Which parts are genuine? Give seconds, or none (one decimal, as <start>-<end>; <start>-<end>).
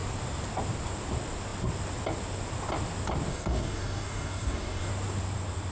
0.0-3.3; 4.9-5.7